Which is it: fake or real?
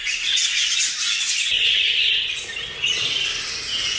real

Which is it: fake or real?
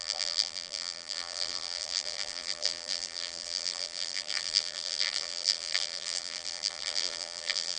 fake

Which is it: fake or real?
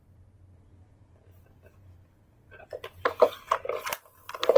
real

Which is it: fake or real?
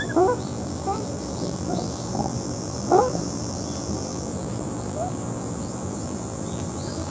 fake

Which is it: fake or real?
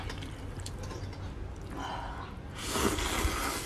real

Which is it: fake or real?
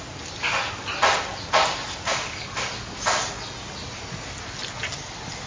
real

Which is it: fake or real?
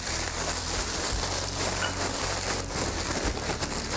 fake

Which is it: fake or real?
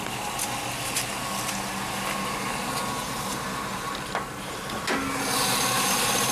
real